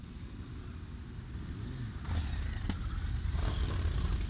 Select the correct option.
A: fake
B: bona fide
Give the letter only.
B